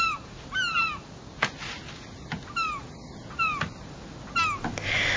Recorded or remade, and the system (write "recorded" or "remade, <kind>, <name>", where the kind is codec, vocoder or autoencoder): recorded